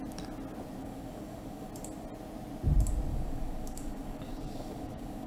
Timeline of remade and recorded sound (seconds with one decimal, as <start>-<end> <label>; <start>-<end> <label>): 0.0-0.8 recorded; 0.8-1.7 remade; 1.7-3.1 recorded; 3.1-5.3 remade